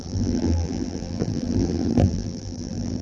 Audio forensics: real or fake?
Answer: fake